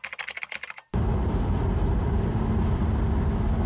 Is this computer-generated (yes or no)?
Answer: no